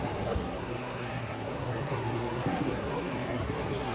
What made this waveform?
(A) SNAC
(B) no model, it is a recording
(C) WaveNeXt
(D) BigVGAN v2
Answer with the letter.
A